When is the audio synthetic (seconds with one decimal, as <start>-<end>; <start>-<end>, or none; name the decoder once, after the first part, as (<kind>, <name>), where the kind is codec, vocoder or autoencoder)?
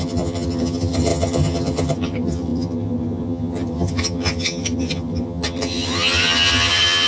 0.0-7.1 (vocoder, HiFi-GAN)